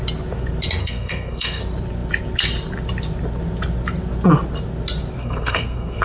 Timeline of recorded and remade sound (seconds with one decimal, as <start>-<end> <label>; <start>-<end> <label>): 0.0-0.8 recorded; 0.8-1.6 remade; 1.6-5.2 recorded; 5.2-6.0 remade